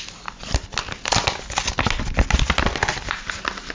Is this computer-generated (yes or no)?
no